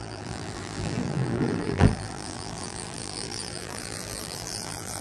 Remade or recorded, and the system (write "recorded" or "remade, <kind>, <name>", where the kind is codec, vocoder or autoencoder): remade, vocoder, BigVGAN v2